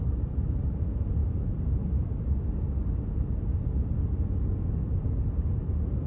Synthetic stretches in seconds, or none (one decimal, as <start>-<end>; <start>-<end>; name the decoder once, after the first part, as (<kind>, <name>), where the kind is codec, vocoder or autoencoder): none